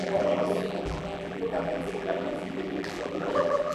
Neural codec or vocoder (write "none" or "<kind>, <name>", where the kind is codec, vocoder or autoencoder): vocoder, BigVGAN v2